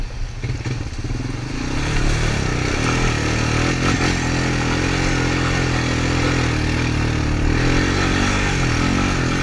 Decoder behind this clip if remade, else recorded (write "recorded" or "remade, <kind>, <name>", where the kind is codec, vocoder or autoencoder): recorded